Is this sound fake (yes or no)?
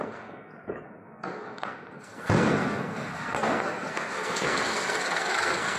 yes